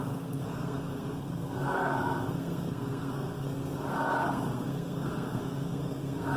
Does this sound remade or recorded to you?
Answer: remade